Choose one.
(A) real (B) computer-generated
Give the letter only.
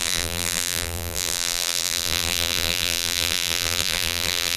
B